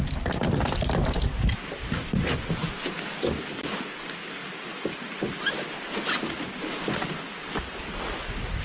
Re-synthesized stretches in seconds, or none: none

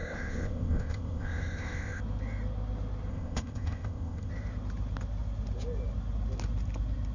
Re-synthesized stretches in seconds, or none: 0.0-2.0 (codec, ZipCodec); 3.1-4.3

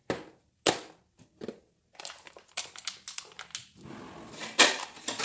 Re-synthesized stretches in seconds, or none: none